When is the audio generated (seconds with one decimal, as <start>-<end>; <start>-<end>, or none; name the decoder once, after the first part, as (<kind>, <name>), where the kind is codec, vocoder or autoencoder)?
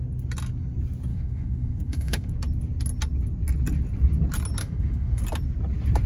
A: 1.1-2.3 (autoencoder, DAC-VAE); 4.6-5.2